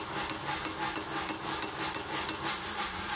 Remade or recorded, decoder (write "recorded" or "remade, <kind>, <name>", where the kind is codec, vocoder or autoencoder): recorded